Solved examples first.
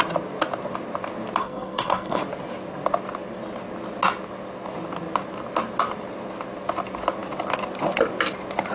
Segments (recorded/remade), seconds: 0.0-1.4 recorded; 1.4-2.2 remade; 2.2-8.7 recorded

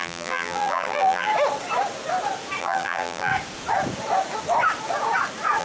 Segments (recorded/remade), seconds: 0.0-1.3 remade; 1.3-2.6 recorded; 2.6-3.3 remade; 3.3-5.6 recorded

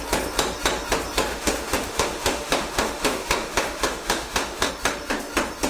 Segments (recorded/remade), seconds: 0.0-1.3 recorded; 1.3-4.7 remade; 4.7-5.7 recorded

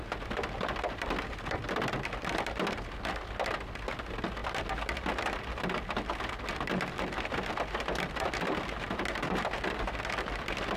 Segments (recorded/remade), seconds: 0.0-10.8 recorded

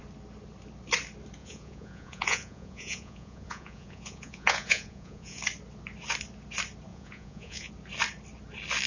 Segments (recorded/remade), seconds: 0.0-1.4 recorded; 1.4-5.4 remade; 5.4-6.9 recorded; 6.9-7.7 remade; 7.7-8.9 recorded